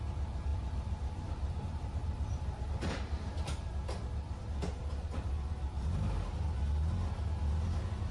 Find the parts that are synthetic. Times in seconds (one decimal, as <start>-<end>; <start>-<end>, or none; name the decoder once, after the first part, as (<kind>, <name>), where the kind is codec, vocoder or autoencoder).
0.5-5.3 (vocoder, BigVGAN v2)